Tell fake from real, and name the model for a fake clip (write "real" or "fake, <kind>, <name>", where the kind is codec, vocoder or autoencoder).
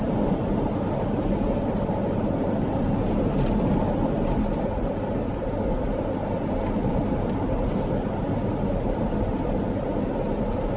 real